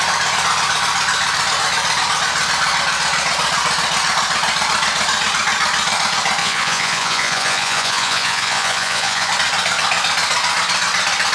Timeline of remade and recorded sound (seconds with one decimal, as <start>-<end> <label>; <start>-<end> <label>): 0.0-6.4 recorded; 6.4-9.3 remade; 9.3-11.3 recorded